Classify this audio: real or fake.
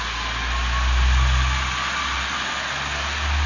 real